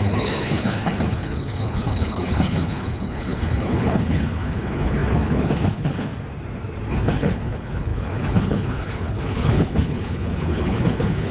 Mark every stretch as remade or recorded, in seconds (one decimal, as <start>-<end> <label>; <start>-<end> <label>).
0.0-6.1 remade; 6.1-6.9 recorded; 6.9-11.3 remade